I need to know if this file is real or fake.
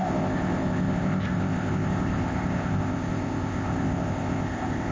fake